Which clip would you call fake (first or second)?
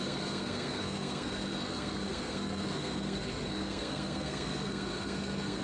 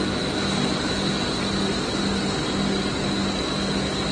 first